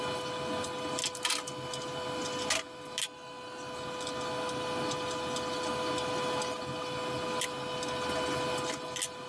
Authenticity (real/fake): real